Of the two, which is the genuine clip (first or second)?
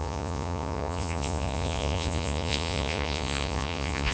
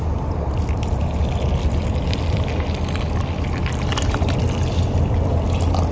second